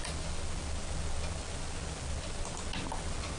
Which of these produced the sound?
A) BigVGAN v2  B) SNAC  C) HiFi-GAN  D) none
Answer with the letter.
D